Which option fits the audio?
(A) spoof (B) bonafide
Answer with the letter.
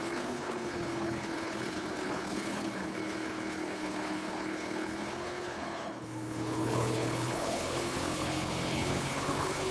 A